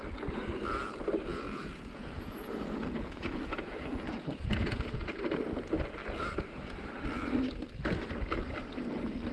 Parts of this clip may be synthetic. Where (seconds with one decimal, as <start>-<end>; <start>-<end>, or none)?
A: 1.3-5.2